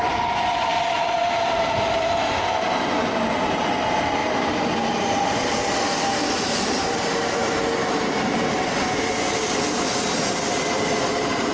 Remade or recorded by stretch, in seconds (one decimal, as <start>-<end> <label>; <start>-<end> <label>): 0.0-11.5 recorded